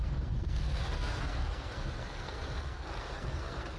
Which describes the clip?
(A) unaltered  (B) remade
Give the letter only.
B